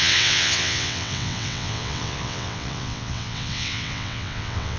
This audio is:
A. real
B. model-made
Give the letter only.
B